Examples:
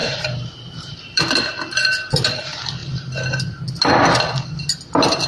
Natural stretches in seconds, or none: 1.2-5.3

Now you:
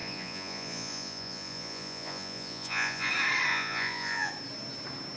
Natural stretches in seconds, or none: 3.1-3.5; 4.3-5.2

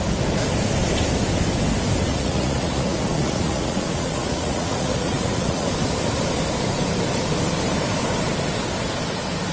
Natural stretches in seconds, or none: 0.0-2.1; 5.7-9.5

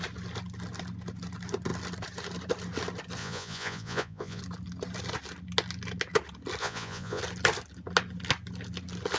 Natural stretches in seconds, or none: 0.0-3.2; 4.4-6.6; 7.2-9.2

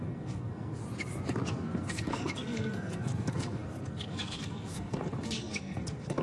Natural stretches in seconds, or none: 0.8-1.5

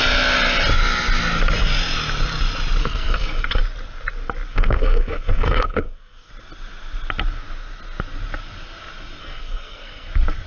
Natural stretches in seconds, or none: 0.0-2.8; 3.6-4.5; 6.3-9.2; 10.1-10.5

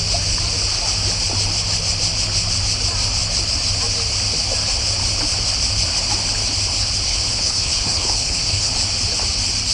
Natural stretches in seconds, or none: 0.0-7.1; 8.7-9.7

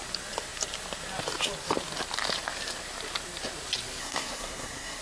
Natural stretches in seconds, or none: 0.0-4.0